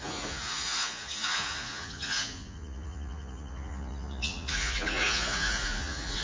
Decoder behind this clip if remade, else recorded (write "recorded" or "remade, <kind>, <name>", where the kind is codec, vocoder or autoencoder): remade, vocoder, Vocos